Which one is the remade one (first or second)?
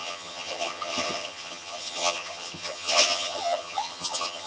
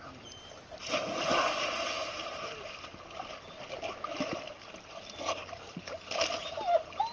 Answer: first